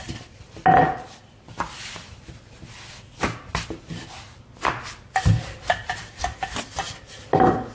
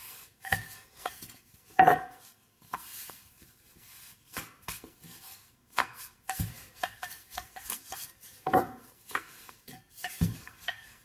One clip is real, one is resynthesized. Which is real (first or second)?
first